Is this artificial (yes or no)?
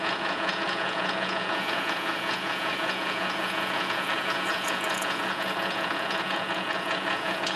yes